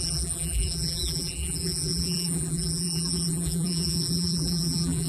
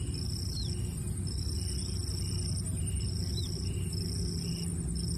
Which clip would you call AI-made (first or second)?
first